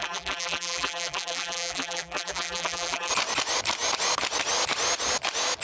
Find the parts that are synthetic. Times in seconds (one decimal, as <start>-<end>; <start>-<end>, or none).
0.0-3.1